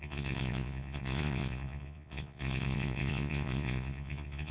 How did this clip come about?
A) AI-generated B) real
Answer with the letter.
A